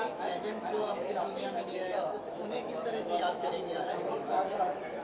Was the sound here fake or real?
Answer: fake